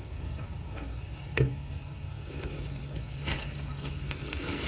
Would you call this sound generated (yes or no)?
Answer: yes